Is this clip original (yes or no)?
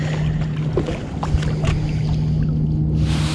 yes